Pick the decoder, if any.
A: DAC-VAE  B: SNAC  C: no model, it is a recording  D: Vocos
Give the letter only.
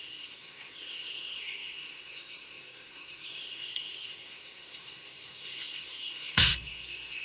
B